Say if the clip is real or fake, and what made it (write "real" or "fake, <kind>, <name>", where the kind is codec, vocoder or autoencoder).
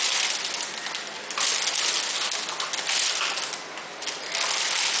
real